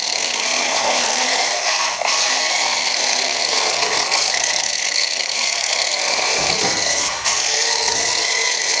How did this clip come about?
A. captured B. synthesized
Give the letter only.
B